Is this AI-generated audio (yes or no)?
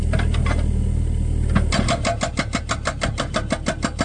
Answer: no